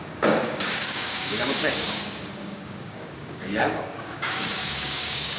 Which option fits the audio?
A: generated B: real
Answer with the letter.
A